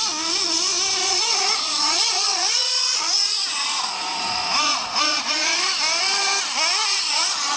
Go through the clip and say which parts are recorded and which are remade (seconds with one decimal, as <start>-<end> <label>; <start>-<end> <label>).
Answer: 0.0-1.0 recorded; 1.0-5.6 remade; 5.6-6.9 recorded; 6.9-7.6 remade